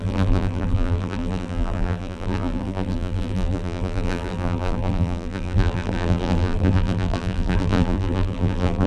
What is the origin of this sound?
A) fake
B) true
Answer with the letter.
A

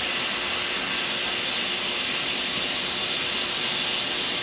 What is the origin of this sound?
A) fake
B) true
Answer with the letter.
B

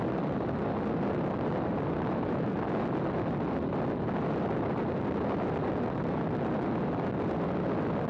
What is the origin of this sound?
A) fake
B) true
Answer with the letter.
B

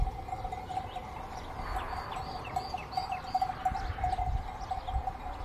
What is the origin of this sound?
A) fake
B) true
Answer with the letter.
B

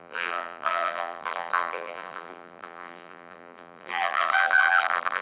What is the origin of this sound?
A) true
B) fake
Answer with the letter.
B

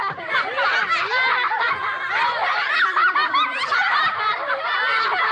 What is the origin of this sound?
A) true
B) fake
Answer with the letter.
A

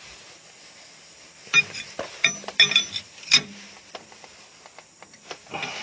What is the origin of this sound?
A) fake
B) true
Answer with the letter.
B